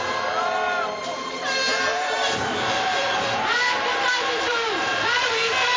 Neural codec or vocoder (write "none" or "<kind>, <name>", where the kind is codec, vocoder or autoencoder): vocoder, BigVGAN v2